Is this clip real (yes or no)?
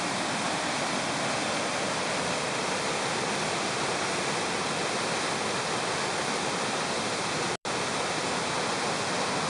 yes